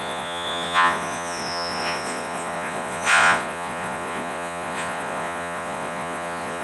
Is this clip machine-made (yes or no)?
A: yes